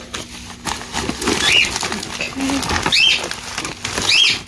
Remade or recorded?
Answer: recorded